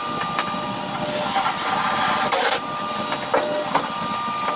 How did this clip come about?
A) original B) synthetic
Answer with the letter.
A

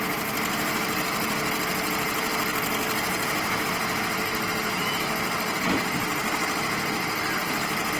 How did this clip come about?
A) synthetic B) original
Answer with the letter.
B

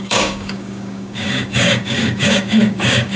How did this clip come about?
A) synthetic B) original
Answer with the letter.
A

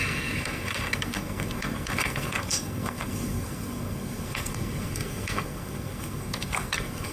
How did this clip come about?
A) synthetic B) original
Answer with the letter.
A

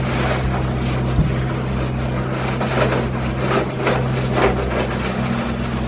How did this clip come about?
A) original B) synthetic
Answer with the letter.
A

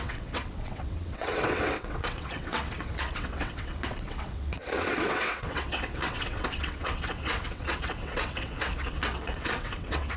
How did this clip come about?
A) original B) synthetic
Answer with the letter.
B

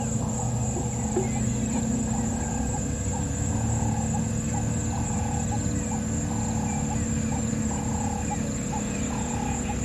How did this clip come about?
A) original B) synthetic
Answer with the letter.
A